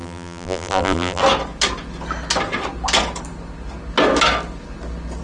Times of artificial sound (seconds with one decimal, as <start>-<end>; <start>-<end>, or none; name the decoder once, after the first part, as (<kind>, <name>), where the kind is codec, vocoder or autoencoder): 0.0-1.2 (vocoder, BigVGAN v2)